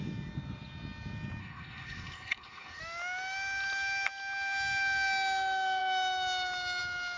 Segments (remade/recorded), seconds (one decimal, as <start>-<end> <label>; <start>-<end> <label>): 0.0-1.4 recorded; 1.4-2.8 remade; 2.8-7.2 recorded